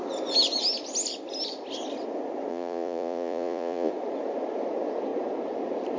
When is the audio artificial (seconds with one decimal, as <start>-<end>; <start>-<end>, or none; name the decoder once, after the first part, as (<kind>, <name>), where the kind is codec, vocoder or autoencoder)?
2.5-3.9 (vocoder, Vocos)